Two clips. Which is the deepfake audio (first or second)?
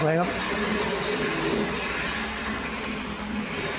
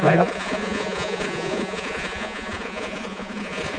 second